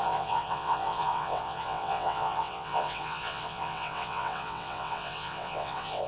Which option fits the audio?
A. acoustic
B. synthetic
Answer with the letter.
B